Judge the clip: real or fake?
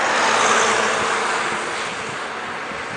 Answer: real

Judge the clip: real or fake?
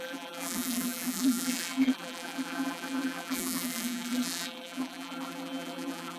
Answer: fake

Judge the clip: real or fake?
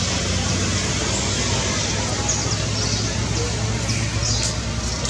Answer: real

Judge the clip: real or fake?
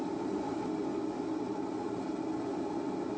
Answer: real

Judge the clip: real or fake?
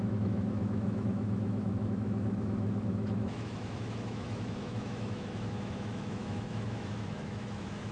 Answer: fake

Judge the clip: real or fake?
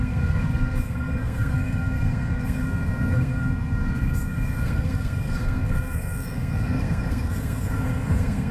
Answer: fake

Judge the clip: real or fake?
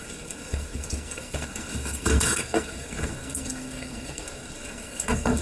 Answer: fake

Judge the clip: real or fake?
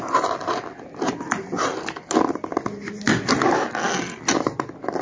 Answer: real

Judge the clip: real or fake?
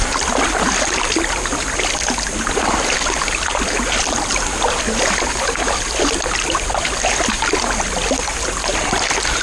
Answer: real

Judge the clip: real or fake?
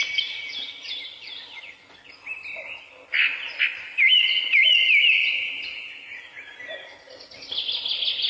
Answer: real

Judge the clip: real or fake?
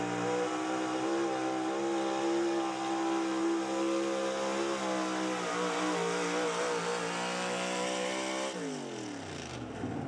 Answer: real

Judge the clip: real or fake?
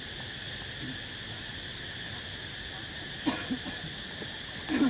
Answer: real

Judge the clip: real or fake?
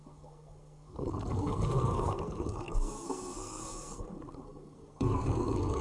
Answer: fake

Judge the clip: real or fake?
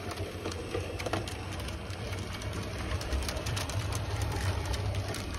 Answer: fake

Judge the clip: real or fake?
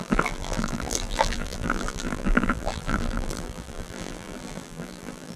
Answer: fake